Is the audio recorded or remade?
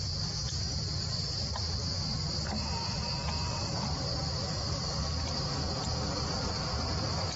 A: recorded